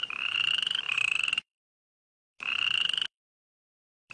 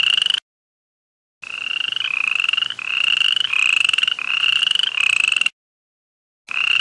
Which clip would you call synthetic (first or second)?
first